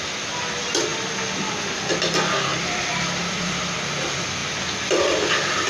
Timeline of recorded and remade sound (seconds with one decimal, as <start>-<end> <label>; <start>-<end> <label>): 0.0-2.5 recorded; 2.5-3.6 remade; 3.6-5.7 recorded